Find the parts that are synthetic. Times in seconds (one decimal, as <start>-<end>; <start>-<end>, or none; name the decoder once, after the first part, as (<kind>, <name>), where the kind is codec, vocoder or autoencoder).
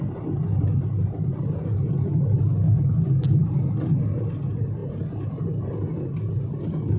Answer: none